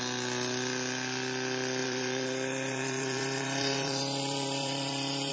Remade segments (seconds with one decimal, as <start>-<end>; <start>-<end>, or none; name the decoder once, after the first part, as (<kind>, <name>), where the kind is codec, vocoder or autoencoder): 1.8-5.3 (vocoder, BigVGAN v2)